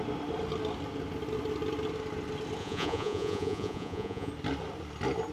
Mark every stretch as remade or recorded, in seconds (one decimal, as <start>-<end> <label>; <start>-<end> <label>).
0.0-2.6 recorded; 2.6-4.3 remade; 4.3-5.3 recorded